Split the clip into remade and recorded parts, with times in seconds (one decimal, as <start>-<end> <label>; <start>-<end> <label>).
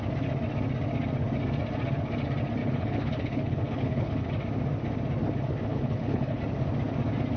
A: 0.0-2.6 recorded; 2.6-4.3 remade; 4.3-5.7 recorded; 5.7-6.4 remade; 6.4-7.4 recorded